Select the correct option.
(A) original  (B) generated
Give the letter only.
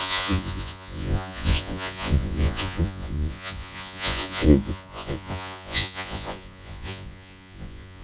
B